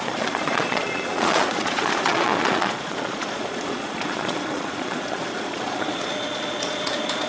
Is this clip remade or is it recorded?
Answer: remade